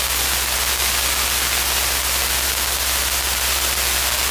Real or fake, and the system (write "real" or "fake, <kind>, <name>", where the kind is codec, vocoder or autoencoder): real